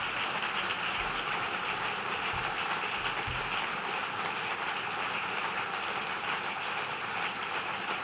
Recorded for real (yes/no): yes